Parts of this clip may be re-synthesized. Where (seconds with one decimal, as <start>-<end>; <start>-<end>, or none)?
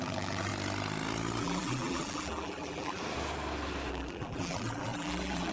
0.0-0.5; 1.4-3.0; 3.9-5.5